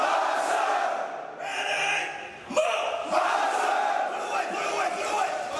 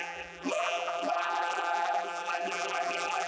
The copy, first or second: second